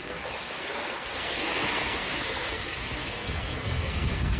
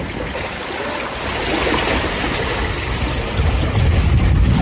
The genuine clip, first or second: second